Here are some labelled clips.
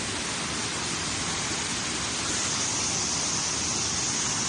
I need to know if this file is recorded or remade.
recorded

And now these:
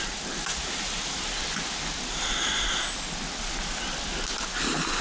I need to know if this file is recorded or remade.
recorded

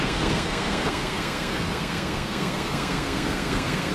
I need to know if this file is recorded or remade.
remade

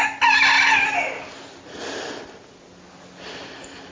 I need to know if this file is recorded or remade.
recorded